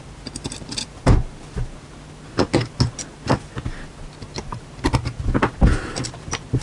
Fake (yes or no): no